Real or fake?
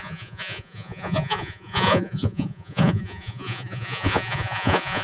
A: fake